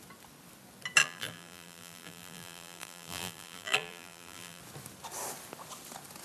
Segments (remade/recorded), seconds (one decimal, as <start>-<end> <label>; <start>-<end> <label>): 0.0-1.0 recorded; 1.0-4.6 remade; 4.6-6.2 recorded